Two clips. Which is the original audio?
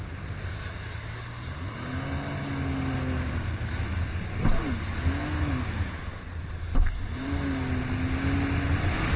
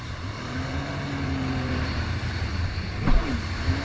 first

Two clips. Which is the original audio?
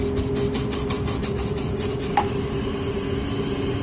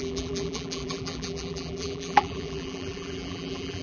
first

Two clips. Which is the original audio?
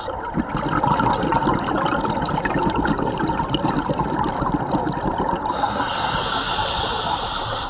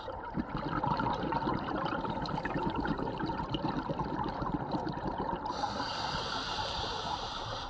first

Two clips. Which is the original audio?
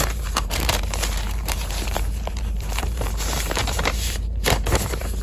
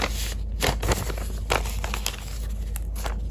second